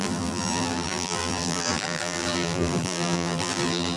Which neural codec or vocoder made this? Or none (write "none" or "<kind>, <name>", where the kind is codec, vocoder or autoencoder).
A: vocoder, BigVGAN v2